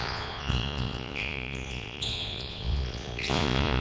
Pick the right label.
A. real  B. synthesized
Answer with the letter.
B